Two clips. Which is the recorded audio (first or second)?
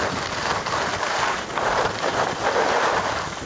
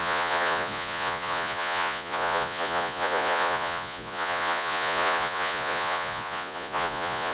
first